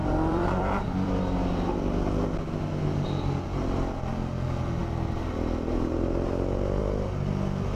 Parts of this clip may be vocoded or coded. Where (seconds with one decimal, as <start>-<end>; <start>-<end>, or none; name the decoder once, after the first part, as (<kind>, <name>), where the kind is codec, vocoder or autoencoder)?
0.0-1.2 (vocoder, BigVGAN v2)